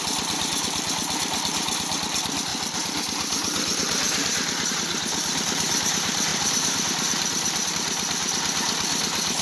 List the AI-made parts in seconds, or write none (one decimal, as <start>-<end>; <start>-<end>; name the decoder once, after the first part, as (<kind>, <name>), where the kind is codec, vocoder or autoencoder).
2.5-4.7 (vocoder, BigVGAN v2); 6.3-7.7